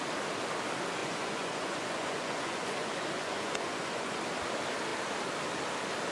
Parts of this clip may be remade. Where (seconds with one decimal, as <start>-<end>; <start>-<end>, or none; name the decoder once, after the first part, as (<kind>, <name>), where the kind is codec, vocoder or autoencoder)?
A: 1.0-4.2 (vocoder, Vocos)

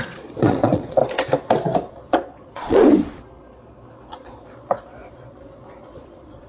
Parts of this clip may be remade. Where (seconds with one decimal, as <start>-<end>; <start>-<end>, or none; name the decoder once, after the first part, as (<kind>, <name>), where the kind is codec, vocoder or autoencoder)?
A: 0.0-1.0 (vocoder, Vocos); 1.9-2.9; 4.1-6.5

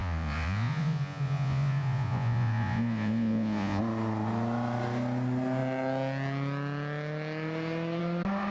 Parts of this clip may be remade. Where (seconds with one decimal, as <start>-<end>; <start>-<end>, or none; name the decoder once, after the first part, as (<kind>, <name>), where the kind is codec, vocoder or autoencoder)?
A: 0.0-3.8 (vocoder, Vocos)

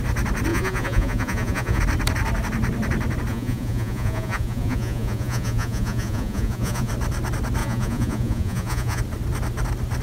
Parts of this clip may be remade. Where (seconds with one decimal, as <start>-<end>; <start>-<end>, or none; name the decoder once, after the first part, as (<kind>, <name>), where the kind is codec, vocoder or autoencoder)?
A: 0.5-1.8 (vocoder, Vocos); 3.3-6.9; 7.6-9.0

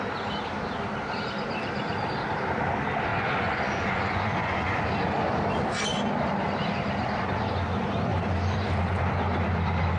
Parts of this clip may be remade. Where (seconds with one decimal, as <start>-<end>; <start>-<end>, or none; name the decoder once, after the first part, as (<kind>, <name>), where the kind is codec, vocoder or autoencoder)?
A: 3.1-4.8 (vocoder, Vocos)

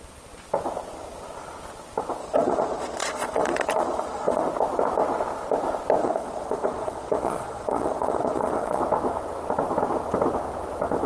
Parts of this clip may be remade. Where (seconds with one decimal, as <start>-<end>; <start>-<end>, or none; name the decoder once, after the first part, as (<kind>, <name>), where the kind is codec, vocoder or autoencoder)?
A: 2.2-4.4 (vocoder, Vocos); 6.0-8.8

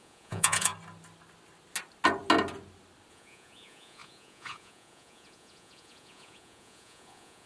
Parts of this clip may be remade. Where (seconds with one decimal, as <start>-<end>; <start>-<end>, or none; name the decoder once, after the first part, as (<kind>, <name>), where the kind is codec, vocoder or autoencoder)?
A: 0.0-0.7 (vocoder, Vocos); 3.1-7.5

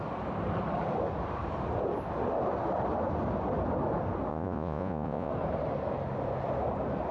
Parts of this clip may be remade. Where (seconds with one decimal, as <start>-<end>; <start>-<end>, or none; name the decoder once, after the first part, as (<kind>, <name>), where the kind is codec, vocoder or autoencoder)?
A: 4.3-5.3 (vocoder, Vocos)